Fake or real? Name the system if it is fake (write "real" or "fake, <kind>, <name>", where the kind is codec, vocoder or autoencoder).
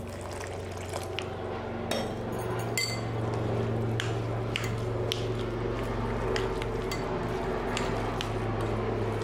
real